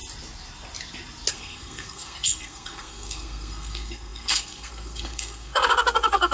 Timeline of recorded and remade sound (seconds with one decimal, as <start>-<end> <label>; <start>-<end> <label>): 0.0-1.3 recorded; 1.3-6.3 remade